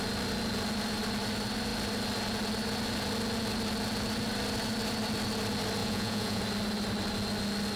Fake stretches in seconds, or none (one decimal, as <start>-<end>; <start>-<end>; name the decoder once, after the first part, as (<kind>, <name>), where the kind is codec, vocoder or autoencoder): 5.8-6.4 (vocoder, Vocos)